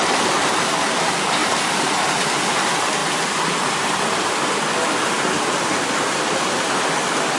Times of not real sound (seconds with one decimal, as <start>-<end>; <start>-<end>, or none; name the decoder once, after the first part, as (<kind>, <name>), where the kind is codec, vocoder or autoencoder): 1.4-2.3 (vocoder, BigVGAN v2)